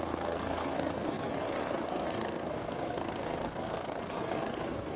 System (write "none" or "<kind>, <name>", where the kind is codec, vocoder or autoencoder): codec, SNAC